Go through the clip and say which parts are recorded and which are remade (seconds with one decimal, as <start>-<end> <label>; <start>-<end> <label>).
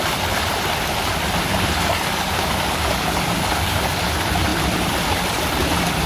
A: 0.0-1.5 recorded; 1.5-3.9 remade; 3.9-6.1 recorded